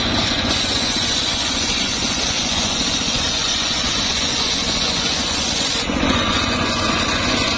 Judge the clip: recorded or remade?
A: remade